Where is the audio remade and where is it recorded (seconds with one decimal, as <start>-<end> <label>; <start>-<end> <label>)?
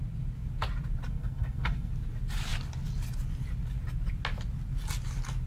0.0-1.1 recorded; 1.1-1.9 remade; 1.9-5.5 recorded